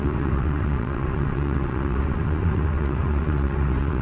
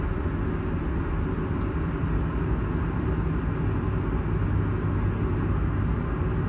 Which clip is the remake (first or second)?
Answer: first